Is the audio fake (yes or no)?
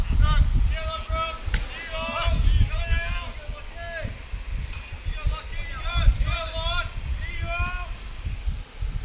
no